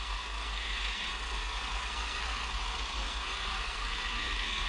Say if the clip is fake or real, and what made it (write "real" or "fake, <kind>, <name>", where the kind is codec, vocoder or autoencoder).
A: fake, codec, SNAC